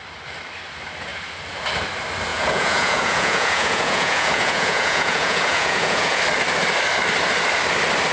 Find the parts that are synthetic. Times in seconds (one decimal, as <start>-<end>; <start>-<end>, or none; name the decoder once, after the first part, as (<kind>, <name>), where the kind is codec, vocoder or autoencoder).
2.3-6.2 (vocoder, Vocos)